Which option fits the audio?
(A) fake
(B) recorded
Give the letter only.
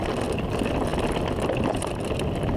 B